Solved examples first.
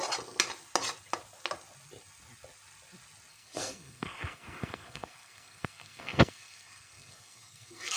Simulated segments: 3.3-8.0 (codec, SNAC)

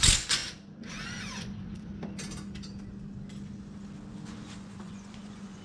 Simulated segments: 0.0-0.4 (vocoder, Vocos); 0.9-1.9; 4.1-5.6

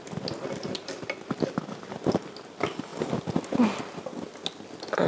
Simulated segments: none

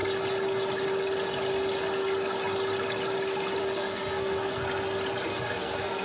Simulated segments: 3.6-4.6 (codec, SNAC); 5.3-6.0

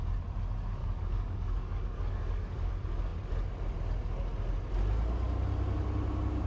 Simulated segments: 0.8-2.7 (codec, DAC)

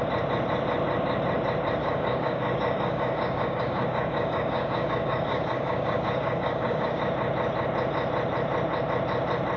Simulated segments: 1.8-7.0 (codec, DAC)

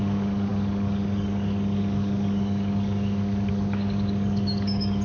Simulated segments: 0.0-5.0 (codec, DAC)